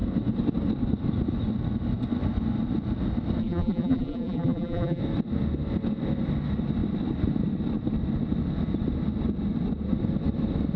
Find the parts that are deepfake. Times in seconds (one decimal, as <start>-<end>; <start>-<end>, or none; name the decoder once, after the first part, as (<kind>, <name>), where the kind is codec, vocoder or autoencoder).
3.4-5.0 (vocoder, BigVGAN v2)